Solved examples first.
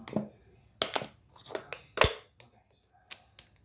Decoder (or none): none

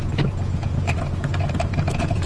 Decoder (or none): vocoder, Vocos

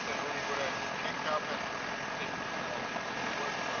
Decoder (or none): none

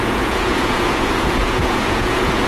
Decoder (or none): vocoder, Vocos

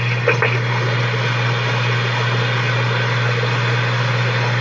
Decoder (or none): none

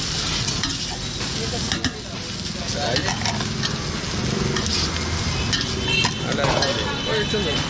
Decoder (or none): none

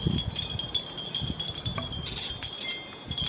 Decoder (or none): none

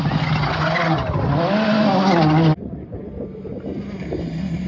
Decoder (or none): none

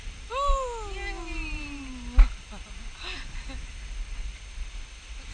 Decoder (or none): none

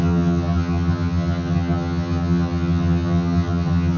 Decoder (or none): vocoder, HiFi-GAN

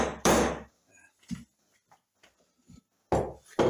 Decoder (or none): none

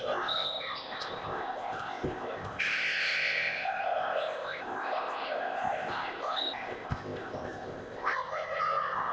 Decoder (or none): codec, ZipCodec